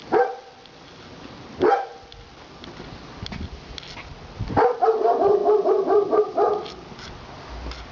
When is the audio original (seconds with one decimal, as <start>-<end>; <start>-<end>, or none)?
0.0-7.9